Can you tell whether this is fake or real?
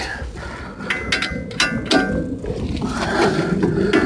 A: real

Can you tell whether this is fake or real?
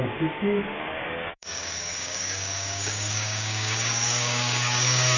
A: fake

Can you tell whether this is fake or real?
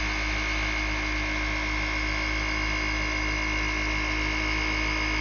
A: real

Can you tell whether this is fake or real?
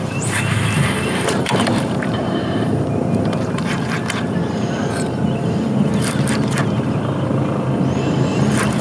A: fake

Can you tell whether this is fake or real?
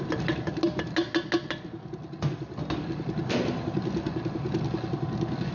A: real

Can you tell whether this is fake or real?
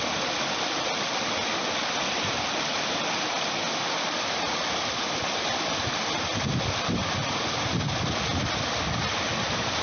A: real